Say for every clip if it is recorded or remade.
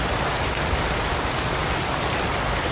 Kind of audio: recorded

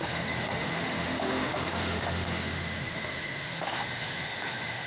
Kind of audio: remade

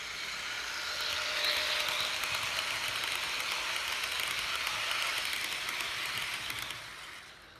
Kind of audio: recorded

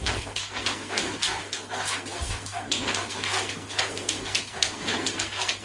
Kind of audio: remade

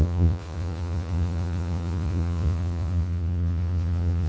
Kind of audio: remade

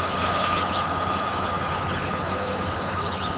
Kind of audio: remade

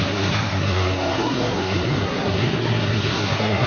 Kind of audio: remade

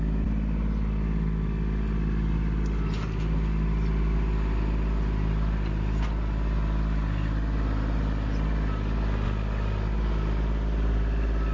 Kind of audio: recorded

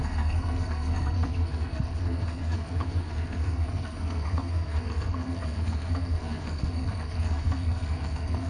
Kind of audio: remade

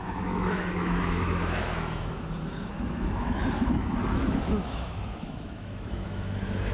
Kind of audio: remade